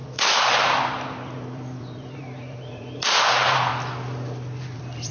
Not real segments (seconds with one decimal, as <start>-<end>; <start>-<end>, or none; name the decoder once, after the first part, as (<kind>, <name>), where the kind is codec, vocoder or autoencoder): 0.0-3.7 (vocoder, BigVGAN v2); 4.6-5.1